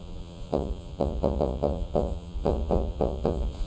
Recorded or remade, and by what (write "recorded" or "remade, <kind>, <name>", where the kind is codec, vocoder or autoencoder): remade, vocoder, Vocos